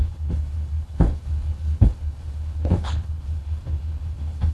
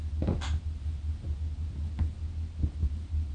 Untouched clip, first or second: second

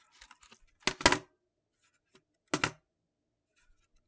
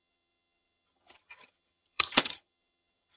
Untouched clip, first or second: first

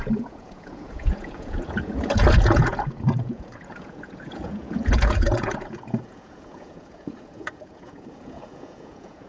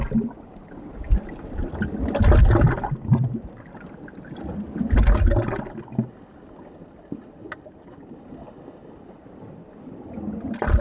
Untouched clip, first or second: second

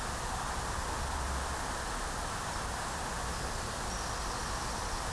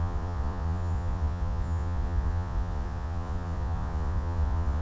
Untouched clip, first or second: first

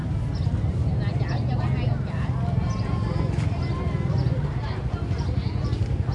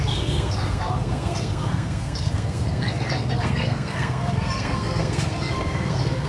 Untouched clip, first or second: first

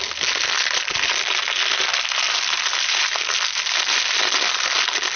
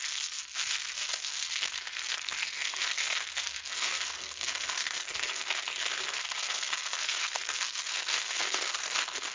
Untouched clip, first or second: first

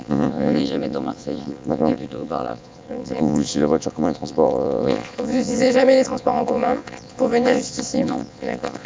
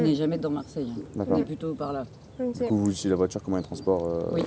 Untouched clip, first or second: second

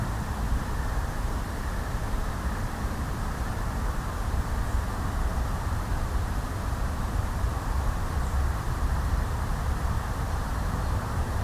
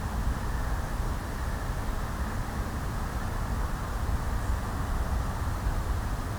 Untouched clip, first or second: second